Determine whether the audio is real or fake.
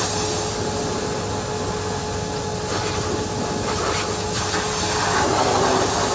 real